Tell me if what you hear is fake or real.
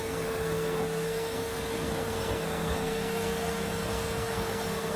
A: fake